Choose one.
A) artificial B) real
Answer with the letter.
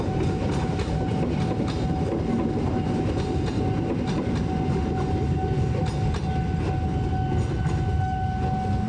B